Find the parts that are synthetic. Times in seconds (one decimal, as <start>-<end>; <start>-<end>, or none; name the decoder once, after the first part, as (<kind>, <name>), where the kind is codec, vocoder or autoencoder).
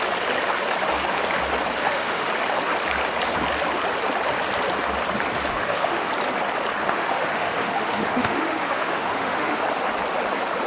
1.8-2.3 (autoencoder, DAC-VAE); 5.5-6.1; 6.8-9.6